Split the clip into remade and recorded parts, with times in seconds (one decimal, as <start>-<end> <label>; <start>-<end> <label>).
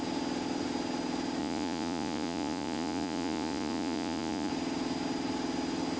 0.0-1.4 recorded; 1.4-4.5 remade; 4.5-6.0 recorded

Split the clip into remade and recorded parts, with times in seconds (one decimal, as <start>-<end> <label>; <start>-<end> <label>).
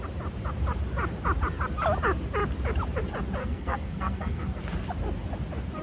0.0-3.4 recorded; 3.4-4.6 remade; 4.6-5.8 recorded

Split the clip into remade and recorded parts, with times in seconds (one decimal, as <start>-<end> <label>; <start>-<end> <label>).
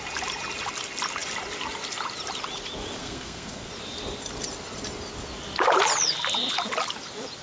0.0-3.0 recorded; 3.0-3.7 remade; 3.7-7.4 recorded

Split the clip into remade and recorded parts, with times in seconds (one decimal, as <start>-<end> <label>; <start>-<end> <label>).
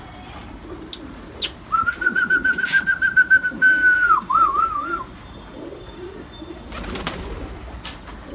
0.0-8.3 remade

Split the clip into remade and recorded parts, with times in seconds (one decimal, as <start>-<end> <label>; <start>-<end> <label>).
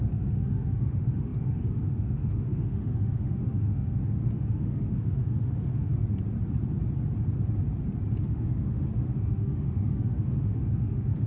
0.0-5.9 remade; 5.9-8.2 recorded; 8.2-11.3 remade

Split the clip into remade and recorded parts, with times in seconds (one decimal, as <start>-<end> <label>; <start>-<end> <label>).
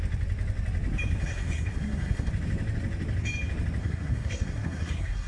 0.0-1.2 recorded; 1.2-2.3 remade; 2.3-3.8 recorded; 3.8-5.3 remade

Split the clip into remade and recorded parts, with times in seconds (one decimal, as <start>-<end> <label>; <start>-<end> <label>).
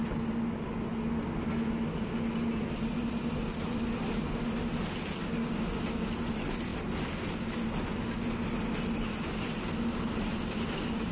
0.0-11.1 recorded